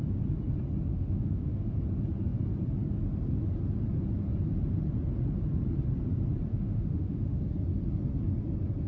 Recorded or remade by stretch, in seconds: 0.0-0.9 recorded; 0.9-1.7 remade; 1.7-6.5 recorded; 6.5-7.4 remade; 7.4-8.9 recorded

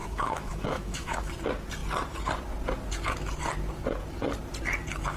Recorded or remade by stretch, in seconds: 0.0-1.3 remade; 1.3-5.2 recorded

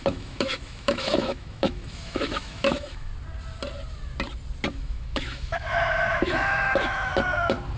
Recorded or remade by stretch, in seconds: 0.0-3.1 remade; 3.1-4.7 recorded; 4.7-7.1 remade; 7.1-7.8 recorded

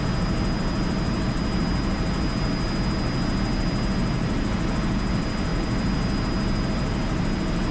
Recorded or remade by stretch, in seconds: 0.0-7.7 recorded